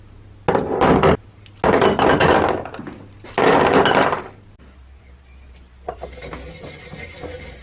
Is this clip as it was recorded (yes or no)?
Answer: yes